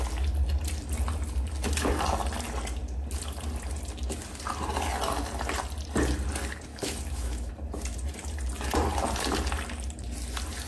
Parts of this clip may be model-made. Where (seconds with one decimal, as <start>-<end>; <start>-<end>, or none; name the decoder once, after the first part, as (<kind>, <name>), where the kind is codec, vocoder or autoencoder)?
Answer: 6.7-7.5 (autoencoder, DAC-VAE)